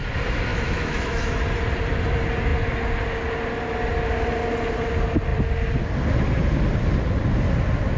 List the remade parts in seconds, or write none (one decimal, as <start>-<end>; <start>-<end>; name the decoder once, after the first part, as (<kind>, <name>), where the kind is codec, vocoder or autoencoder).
0.5-1.4 (autoencoder, DAC-VAE)